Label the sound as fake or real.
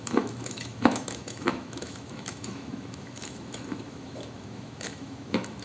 fake